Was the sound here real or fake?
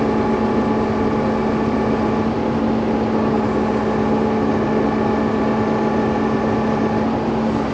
real